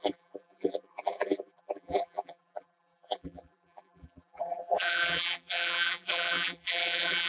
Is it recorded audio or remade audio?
remade